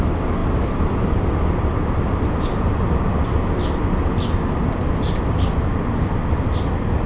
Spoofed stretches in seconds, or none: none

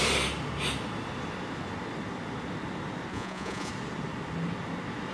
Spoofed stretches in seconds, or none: 3.1-3.7

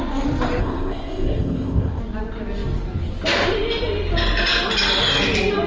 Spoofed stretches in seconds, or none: 0.6-2.0

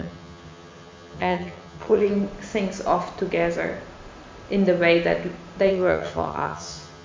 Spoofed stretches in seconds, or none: 0.0-2.1; 5.7-7.0

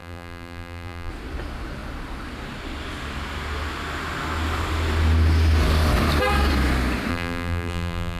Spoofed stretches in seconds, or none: 0.0-1.1; 7.1-8.2

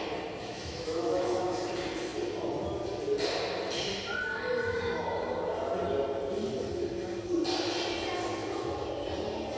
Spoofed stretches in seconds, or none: 0.4-1.7; 8.4-8.9